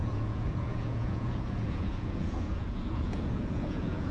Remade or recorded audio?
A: remade